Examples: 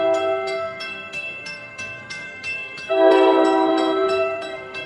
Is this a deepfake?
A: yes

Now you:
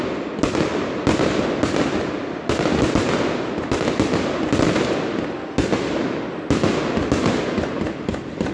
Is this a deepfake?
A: no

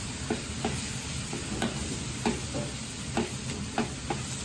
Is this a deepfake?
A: no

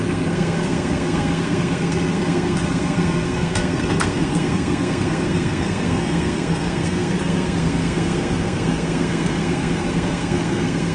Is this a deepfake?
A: yes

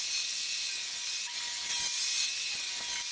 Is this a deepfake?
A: no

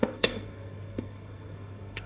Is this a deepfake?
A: yes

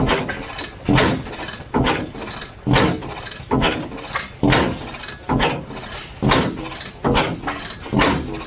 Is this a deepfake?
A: no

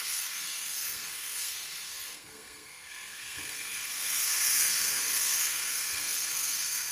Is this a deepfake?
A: yes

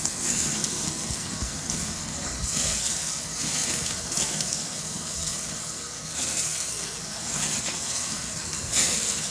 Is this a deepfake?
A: yes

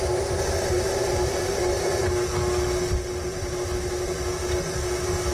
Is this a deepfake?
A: no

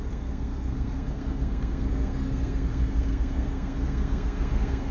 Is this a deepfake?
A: yes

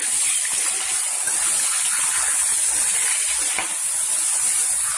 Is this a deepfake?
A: no